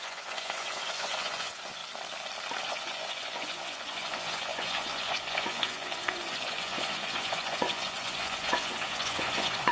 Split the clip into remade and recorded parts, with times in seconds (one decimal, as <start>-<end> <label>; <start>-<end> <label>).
0.0-1.8 remade; 1.8-2.7 recorded; 2.7-9.7 remade